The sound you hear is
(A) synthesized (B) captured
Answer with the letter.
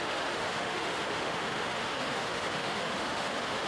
A